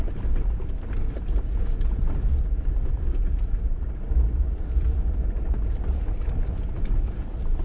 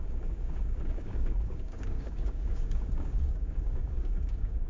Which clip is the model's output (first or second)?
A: second